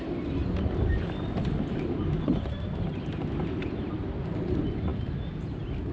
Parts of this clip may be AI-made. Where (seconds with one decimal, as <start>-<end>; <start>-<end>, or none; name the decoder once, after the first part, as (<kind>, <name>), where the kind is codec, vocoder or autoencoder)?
none